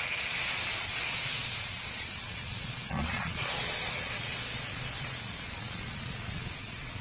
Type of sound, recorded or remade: remade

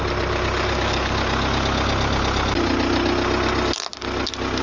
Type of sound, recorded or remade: recorded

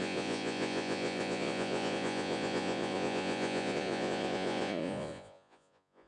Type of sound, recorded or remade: remade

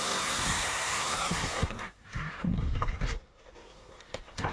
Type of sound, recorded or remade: remade